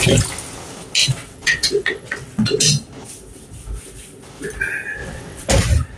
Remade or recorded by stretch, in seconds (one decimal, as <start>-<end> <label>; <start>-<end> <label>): 0.0-1.0 recorded; 1.0-2.7 remade; 2.7-5.0 recorded; 5.0-5.5 remade; 5.5-6.0 recorded